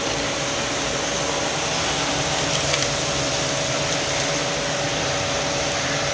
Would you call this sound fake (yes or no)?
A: no